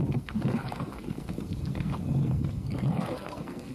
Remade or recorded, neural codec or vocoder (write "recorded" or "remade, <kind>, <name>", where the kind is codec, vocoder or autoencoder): remade, codec, SNAC